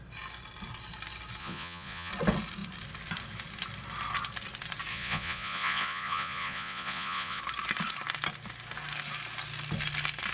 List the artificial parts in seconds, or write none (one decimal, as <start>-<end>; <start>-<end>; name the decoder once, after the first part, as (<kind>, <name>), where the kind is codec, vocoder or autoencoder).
1.4-2.1 (vocoder, Vocos); 4.9-7.4